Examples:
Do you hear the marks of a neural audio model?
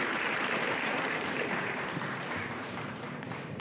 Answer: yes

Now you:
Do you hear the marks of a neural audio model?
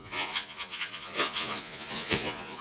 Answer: yes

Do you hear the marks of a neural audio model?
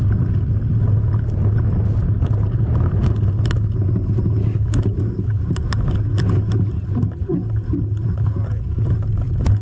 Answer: no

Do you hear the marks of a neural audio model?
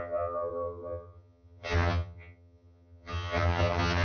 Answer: yes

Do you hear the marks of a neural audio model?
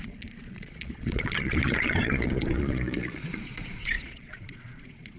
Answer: yes